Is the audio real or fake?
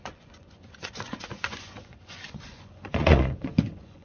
fake